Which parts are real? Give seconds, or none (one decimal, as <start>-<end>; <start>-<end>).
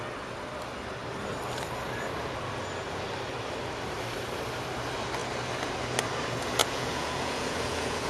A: 0.0-6.6